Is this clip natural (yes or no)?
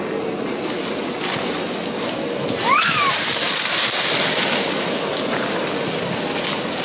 yes